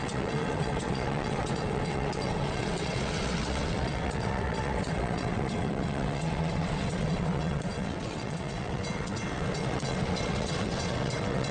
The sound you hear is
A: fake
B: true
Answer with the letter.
A